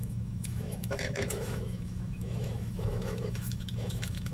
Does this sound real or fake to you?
fake